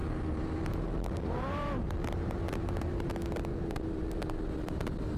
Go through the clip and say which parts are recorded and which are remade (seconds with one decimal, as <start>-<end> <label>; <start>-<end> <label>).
0.0-3.1 remade; 3.1-3.5 recorded; 3.5-5.2 remade